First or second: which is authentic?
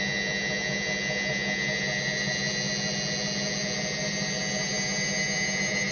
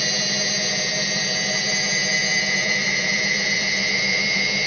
first